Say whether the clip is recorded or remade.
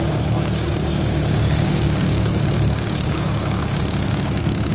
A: remade